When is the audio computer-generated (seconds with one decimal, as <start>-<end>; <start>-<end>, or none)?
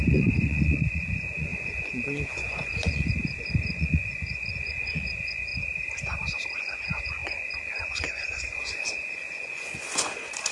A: 0.0-5.5; 6.6-10.5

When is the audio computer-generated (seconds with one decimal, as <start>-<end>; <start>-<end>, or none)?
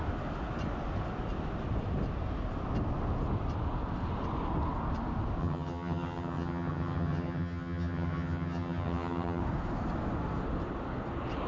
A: 5.4-9.4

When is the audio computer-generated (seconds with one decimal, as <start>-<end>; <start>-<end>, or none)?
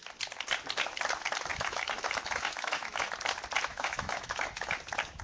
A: 1.5-3.1; 3.7-4.8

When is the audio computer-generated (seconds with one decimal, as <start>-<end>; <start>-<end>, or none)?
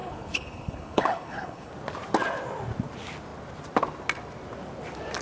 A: 0.0-1.7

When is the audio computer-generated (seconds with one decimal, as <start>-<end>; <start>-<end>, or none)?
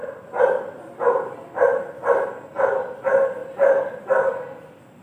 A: none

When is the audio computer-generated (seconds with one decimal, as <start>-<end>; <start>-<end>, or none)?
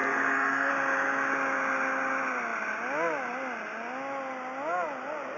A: 0.0-0.7